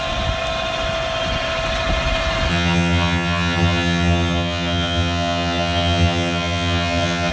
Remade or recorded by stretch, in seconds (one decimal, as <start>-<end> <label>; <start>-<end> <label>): 0.0-2.5 recorded; 2.5-7.3 remade